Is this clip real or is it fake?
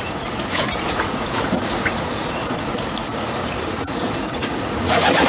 fake